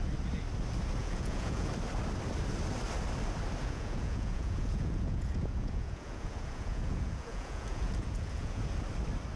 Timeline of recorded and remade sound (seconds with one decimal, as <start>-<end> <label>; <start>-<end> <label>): 0.0-1.0 recorded; 1.0-1.7 remade; 1.7-3.6 recorded; 3.6-8.6 remade; 8.6-9.4 recorded